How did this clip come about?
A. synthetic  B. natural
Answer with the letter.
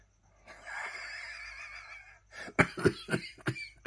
B